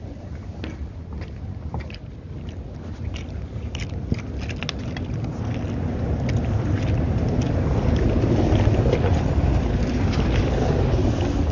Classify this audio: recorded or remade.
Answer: recorded